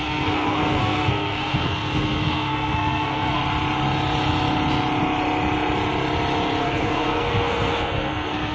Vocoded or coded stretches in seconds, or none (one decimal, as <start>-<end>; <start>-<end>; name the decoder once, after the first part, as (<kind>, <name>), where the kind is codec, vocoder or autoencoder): 0.0-3.4 (codec, SNAC); 6.6-8.5